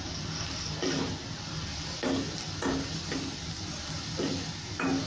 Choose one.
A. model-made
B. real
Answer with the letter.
B